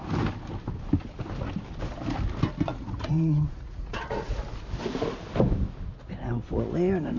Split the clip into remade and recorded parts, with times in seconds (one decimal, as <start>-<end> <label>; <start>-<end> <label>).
0.0-2.7 recorded; 2.7-4.4 remade; 4.4-7.2 recorded